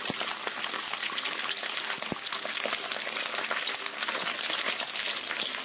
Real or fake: real